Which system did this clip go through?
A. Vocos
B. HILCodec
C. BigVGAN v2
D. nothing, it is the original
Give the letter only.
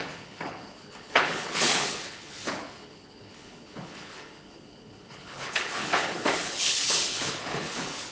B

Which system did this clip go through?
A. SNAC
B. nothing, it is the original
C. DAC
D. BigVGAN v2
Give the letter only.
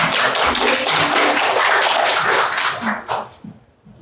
B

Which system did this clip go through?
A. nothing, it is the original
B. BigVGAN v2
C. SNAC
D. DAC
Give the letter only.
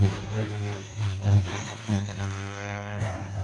C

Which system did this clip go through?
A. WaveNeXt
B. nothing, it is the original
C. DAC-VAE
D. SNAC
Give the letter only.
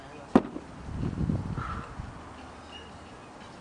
B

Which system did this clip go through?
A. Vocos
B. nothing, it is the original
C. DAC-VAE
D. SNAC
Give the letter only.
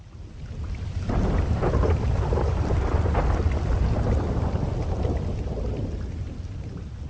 B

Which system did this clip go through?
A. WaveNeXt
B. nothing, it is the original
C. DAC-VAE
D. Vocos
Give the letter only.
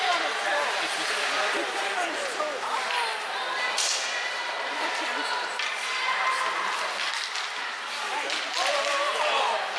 B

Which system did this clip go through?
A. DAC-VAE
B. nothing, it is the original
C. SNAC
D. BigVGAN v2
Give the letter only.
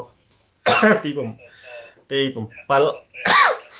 A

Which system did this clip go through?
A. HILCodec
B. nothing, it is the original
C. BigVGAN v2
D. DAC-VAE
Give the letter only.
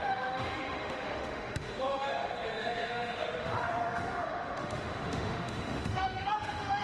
D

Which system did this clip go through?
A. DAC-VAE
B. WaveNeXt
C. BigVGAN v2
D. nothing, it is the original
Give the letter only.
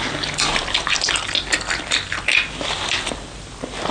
D